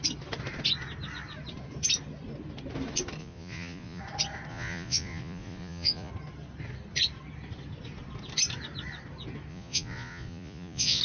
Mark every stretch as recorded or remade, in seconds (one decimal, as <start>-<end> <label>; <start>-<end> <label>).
0.0-3.2 recorded; 3.2-4.0 remade; 4.0-4.5 recorded; 4.5-6.1 remade; 6.1-9.5 recorded; 9.5-11.0 remade